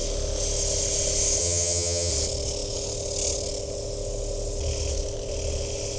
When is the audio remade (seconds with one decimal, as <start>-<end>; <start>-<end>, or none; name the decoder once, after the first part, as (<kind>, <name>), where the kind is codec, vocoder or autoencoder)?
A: 1.4-2.1 (vocoder, HiFi-GAN)